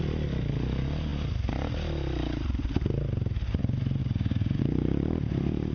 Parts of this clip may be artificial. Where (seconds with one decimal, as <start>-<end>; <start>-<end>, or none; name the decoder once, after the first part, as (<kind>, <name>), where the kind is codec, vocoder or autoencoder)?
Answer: 4.0-4.6 (codec, DAC)